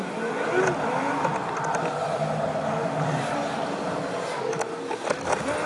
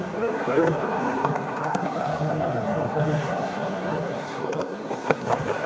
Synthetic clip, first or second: second